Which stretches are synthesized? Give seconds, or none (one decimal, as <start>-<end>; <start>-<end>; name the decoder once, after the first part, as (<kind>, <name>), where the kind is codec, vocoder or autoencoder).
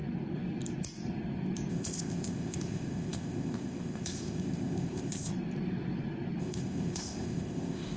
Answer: 1.7-5.3 (codec, ZipCodec); 6.4-8.0